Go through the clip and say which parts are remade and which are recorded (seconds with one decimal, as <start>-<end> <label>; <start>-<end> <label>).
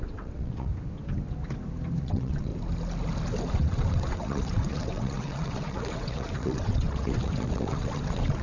0.0-0.7 remade; 0.7-2.0 recorded; 2.0-2.5 remade; 2.5-3.5 recorded; 3.5-8.4 remade